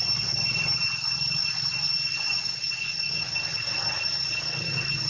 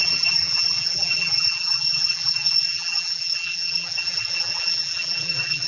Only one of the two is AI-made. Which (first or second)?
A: second